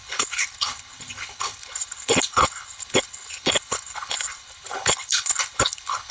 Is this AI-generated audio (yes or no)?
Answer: yes